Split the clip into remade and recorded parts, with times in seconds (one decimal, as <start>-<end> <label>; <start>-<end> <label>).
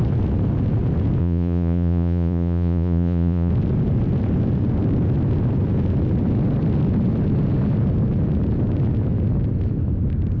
0.0-1.2 recorded; 1.2-3.5 remade; 3.5-10.4 recorded